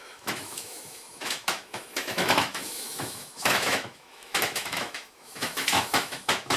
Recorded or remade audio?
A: remade